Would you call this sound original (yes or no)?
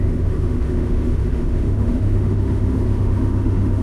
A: no